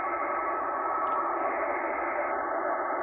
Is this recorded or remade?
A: recorded